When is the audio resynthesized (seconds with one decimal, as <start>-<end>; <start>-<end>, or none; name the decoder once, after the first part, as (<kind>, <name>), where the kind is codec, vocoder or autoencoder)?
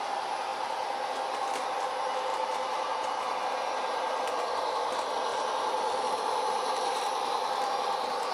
2.3-3.0 (vocoder, BigVGAN v2); 5.3-7.7